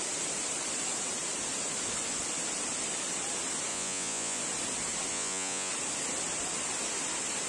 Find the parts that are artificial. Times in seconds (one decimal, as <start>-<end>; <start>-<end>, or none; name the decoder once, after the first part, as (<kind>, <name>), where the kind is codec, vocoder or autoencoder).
3.7-4.4 (vocoder, Vocos); 5.1-5.7